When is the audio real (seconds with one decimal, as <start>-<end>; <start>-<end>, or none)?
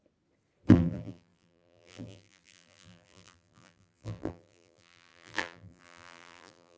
0.0-0.7